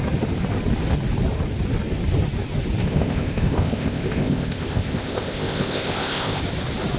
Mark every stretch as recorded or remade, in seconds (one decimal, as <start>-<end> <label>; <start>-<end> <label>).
0.0-2.8 recorded; 2.8-6.4 remade; 6.4-7.0 recorded